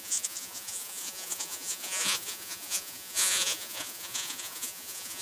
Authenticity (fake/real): fake